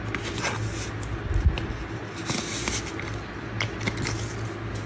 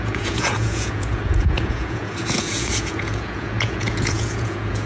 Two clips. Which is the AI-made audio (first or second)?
second